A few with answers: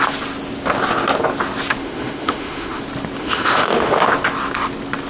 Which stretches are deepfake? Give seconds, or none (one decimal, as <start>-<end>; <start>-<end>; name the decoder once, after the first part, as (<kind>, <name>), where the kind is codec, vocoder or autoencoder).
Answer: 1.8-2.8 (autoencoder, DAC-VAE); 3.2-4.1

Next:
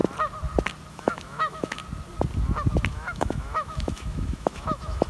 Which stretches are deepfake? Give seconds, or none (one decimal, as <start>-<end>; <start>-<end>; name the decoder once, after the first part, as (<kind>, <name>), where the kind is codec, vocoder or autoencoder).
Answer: 0.9-1.8 (autoencoder, DAC-VAE); 2.9-5.1

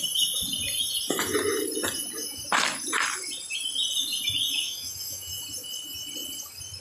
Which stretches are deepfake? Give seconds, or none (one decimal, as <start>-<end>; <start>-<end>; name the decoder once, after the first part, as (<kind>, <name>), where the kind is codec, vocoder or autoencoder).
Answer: 4.5-5.3 (autoencoder, DAC-VAE)

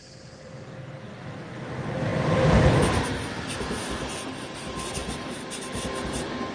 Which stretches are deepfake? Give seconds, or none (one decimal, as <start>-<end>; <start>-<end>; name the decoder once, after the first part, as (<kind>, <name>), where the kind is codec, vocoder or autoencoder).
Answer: none

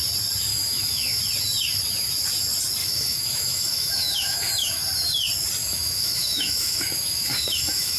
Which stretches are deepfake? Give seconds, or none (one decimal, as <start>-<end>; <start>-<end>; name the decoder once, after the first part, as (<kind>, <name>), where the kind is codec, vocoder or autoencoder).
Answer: 0.5-1.2 (autoencoder, DAC-VAE); 2.8-4.8; 5.6-8.0

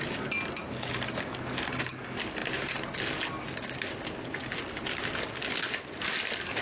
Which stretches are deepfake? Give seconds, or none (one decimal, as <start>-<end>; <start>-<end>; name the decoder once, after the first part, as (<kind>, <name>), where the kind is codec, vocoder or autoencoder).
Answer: none

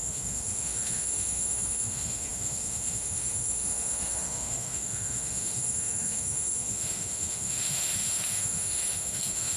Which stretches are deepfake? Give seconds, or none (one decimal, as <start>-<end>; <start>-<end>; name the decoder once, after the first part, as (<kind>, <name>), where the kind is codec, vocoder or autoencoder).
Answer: 0.0-9.6 (autoencoder, DAC-VAE)

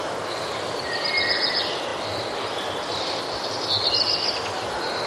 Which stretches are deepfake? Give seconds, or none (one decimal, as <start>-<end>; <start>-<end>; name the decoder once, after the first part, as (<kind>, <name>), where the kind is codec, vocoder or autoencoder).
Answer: none